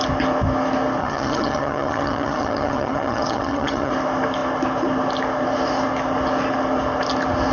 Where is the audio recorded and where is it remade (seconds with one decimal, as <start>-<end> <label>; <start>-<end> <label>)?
0.0-1.0 recorded; 1.0-3.9 remade; 3.9-7.5 recorded